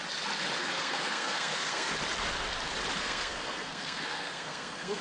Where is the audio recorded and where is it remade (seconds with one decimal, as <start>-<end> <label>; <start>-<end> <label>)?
0.0-0.6 recorded; 0.6-1.9 remade; 1.9-3.0 recorded; 3.0-5.0 remade